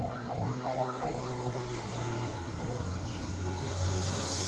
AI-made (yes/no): yes